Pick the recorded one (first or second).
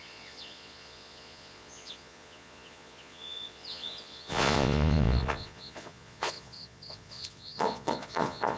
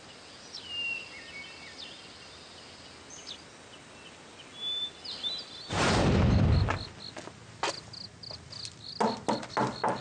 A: second